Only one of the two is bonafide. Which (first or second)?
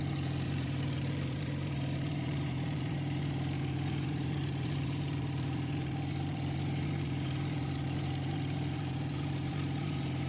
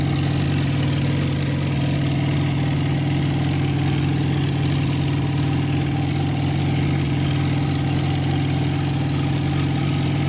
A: second